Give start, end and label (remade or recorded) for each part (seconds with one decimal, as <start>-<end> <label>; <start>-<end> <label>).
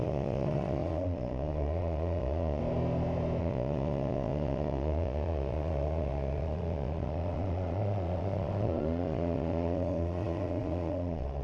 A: 0.0-2.6 remade; 2.6-3.4 recorded; 3.4-11.4 remade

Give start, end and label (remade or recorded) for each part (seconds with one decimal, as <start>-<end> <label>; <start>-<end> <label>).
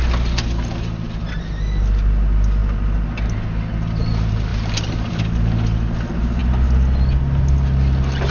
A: 0.0-8.3 recorded